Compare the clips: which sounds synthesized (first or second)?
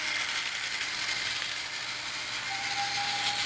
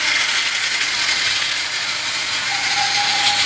second